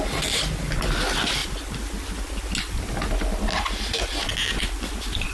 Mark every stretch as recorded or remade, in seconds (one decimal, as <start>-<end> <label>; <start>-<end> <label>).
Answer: 0.0-5.3 recorded